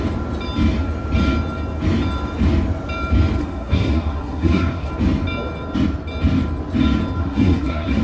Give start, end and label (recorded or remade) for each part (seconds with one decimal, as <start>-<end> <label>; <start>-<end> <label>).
0.0-3.4 recorded; 3.4-4.9 remade; 4.9-7.2 recorded; 7.2-8.0 remade